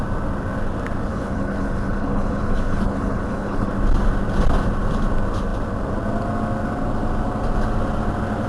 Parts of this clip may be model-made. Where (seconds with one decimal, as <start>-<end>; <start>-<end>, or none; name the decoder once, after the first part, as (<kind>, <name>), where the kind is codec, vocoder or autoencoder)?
1.1-3.7 (codec, HILCodec)